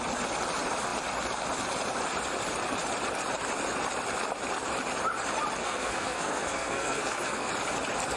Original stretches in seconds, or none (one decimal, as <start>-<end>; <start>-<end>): 0.0-5.6; 7.5-8.2